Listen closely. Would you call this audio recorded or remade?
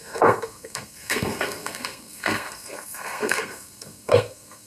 remade